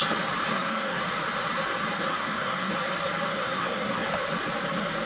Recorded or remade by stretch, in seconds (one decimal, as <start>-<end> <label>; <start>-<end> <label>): 0.0-0.5 recorded; 0.5-1.0 remade; 1.0-2.1 recorded; 2.1-2.7 remade; 2.7-3.3 recorded; 3.3-4.1 remade; 4.1-5.0 recorded